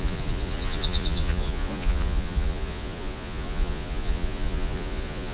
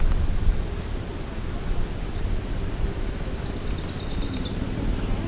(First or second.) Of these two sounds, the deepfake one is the first